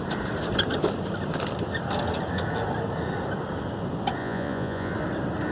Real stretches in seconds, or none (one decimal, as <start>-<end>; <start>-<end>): 0.0-4.2; 4.9-5.5